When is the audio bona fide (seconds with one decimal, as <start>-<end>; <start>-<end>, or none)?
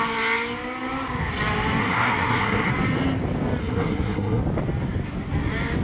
0.0-1.8; 2.7-3.6; 4.4-5.8